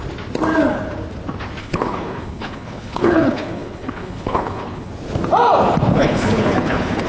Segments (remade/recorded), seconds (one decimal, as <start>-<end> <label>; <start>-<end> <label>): 0.0-1.6 recorded; 1.6-4.9 remade; 4.9-5.9 recorded; 5.9-7.1 remade